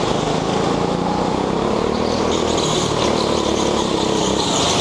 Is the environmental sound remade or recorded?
recorded